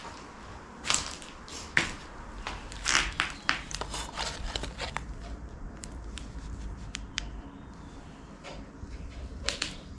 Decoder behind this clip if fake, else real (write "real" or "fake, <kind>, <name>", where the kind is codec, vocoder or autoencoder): fake, vocoder, BigVGAN v2